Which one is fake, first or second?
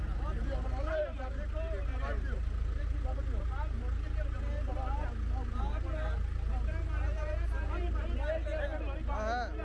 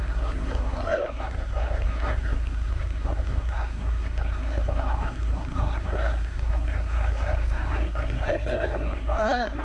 second